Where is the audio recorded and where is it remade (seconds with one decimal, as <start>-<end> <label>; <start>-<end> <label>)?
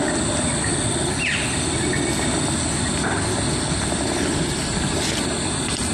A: 0.0-5.9 recorded